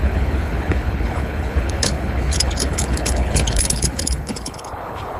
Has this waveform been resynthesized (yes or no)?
yes